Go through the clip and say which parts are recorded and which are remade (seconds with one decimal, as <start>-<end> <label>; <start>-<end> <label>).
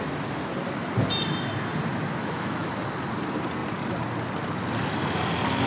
0.0-2.2 recorded; 2.2-2.7 remade; 2.7-5.7 recorded